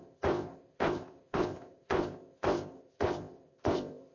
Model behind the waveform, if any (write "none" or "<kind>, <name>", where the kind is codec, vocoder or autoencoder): codec, ZipCodec